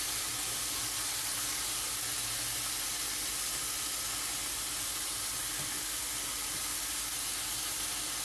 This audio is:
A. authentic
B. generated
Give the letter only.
A